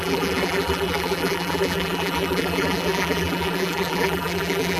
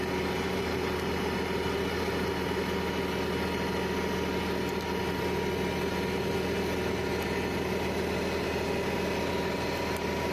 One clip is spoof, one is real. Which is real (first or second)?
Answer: second